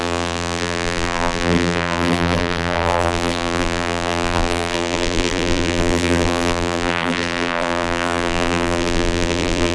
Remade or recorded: remade